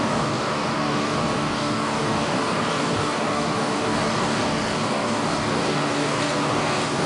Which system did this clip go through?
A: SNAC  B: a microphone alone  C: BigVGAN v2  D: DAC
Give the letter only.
D